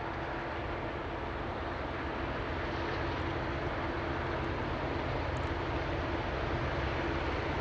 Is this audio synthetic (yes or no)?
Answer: no